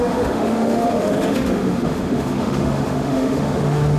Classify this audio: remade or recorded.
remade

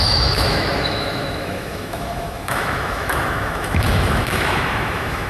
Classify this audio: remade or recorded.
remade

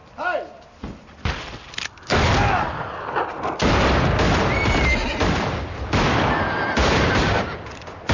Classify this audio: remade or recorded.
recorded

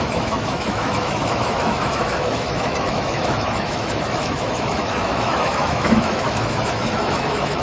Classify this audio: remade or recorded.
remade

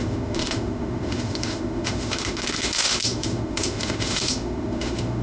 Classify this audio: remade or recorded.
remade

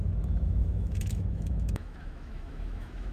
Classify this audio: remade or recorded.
remade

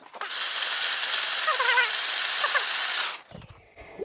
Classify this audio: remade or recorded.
recorded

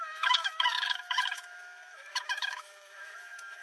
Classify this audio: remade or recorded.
remade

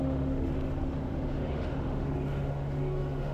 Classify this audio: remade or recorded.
remade